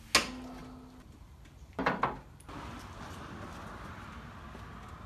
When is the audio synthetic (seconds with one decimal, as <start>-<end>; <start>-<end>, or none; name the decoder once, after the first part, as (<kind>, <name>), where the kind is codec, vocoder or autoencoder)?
none